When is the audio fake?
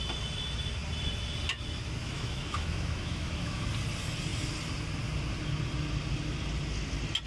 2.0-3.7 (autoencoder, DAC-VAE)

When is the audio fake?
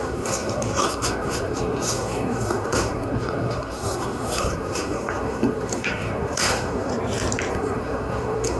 0.0-6.9 (codec, SNAC); 7.5-8.6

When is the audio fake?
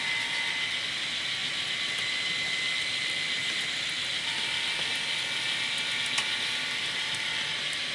none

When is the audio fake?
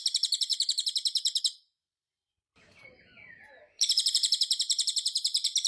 1.8-5.2 (vocoder, BigVGAN v2)